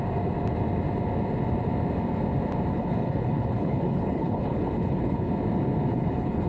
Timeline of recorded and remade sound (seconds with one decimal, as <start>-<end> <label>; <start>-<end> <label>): 0.0-2.7 recorded; 2.7-5.3 remade; 5.3-5.9 recorded; 5.9-6.5 remade